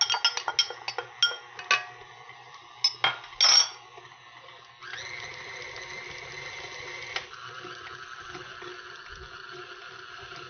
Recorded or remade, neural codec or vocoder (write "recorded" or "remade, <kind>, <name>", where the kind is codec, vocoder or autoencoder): recorded